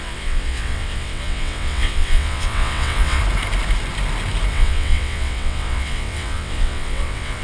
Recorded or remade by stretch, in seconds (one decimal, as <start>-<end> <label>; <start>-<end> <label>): 0.0-3.2 remade; 3.2-4.5 recorded; 4.5-7.4 remade